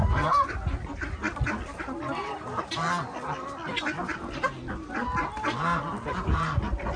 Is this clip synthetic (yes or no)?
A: no